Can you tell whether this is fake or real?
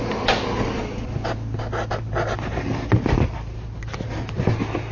real